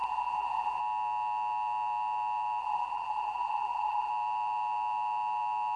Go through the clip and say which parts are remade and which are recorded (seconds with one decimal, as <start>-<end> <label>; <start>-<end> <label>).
0.0-0.8 remade; 0.8-2.6 recorded; 2.6-4.1 remade; 4.1-5.8 recorded